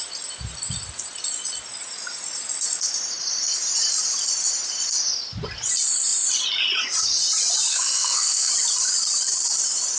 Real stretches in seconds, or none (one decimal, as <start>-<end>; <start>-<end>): 0.0-7.7; 8.5-10.0